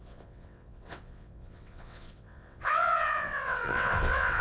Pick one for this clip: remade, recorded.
remade